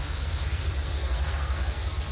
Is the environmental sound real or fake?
fake